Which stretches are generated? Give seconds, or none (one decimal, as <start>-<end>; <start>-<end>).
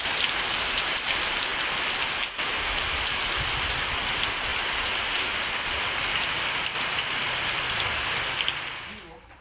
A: none